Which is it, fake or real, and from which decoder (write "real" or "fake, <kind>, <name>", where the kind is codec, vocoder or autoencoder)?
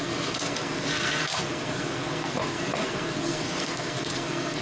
fake, codec, SNAC